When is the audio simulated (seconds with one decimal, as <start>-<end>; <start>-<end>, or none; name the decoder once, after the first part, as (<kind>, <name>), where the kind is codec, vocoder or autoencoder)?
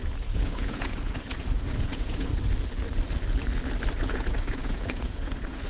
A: 0.0-2.3 (vocoder, Vocos); 4.0-5.7